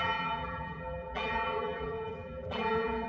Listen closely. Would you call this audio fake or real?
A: fake